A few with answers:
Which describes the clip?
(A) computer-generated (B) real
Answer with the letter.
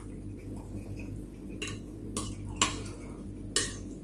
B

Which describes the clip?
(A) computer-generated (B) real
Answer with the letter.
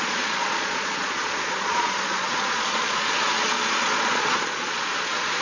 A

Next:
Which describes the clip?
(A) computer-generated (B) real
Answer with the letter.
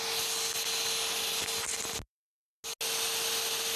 B